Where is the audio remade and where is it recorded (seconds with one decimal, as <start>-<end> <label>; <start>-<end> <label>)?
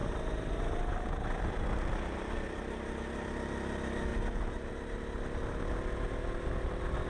0.0-7.1 recorded